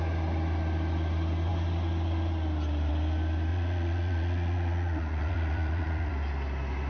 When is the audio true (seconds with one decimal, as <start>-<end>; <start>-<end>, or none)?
0.0-3.5; 6.1-6.9